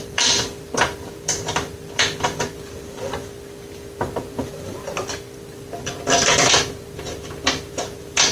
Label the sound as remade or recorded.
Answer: remade